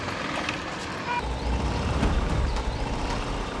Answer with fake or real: fake